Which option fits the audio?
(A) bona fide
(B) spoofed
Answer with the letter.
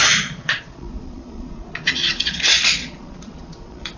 B